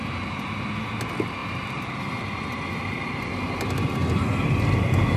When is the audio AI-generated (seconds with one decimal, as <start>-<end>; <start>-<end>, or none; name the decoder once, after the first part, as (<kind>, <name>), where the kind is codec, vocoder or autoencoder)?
1.4-3.3 (vocoder, BigVGAN v2)